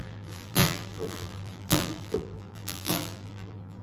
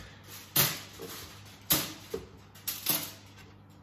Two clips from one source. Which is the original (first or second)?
second